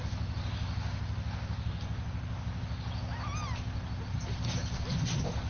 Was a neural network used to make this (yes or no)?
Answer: no